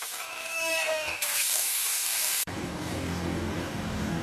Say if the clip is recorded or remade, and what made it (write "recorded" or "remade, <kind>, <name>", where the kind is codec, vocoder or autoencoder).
remade, codec, DAC